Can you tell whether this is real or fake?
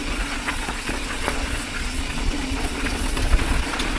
fake